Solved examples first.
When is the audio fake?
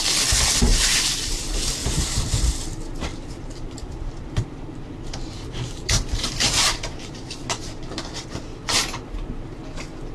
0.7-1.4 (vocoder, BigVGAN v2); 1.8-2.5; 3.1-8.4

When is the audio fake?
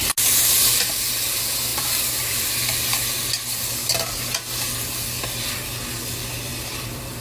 1.7-2.5 (vocoder, BigVGAN v2); 6.5-7.2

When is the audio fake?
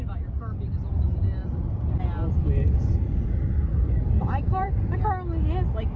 3.7-5.0 (vocoder, BigVGAN v2)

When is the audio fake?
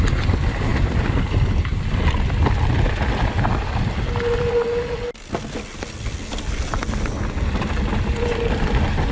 none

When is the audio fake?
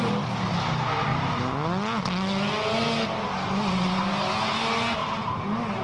none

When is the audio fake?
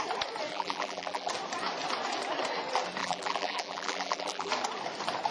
0.5-1.3 (vocoder, BigVGAN v2); 3.0-4.5